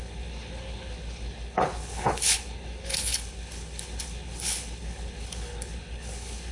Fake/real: fake